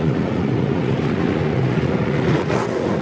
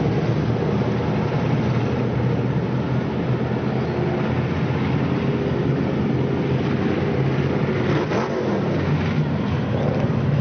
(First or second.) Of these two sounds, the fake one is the first